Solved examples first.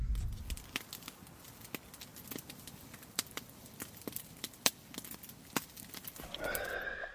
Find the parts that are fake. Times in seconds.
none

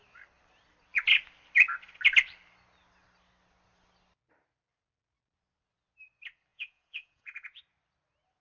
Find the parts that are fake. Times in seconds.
6.5-7.6

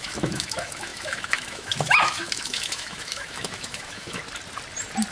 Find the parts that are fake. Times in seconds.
0.0-4.2